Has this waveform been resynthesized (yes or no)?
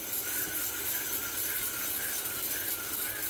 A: no